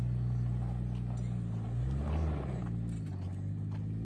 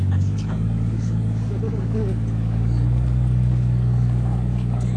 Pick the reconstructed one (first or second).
second